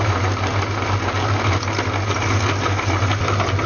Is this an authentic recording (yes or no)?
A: yes